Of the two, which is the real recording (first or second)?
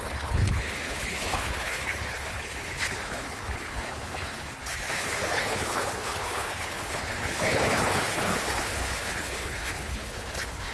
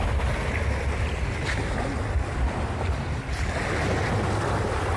second